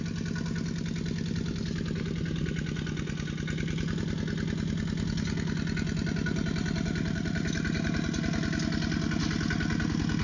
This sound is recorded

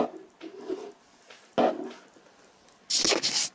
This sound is recorded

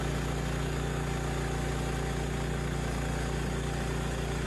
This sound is recorded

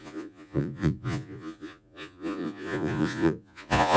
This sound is remade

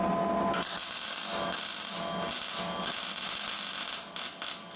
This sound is recorded